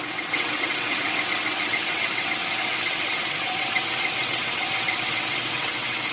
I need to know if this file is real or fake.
fake